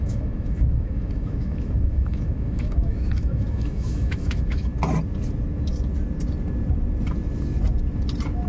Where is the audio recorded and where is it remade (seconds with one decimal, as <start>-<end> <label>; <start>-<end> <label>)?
0.0-4.7 remade; 4.7-8.5 recorded